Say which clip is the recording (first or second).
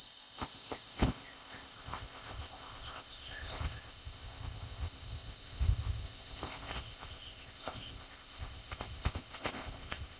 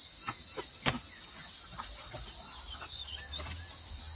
second